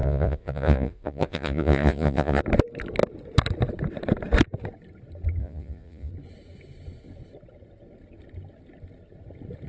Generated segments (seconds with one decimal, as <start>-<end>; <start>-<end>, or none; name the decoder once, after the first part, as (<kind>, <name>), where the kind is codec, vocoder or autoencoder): 0.0-2.4 (vocoder, Vocos); 5.4-6.1